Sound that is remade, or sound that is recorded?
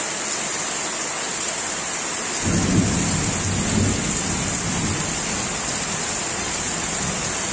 recorded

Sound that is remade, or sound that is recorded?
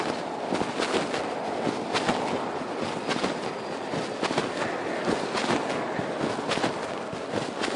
recorded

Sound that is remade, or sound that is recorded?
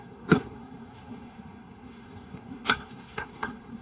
remade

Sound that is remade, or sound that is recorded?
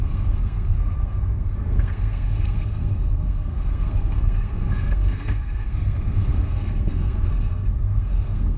remade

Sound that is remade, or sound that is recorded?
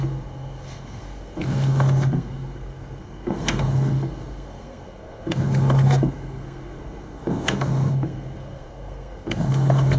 remade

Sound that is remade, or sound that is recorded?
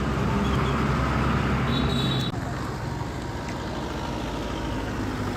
recorded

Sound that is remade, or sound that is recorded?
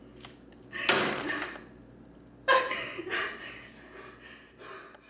recorded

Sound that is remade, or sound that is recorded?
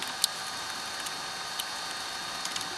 recorded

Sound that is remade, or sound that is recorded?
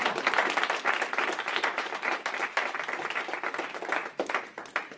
recorded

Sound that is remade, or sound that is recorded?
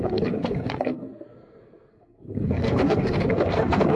remade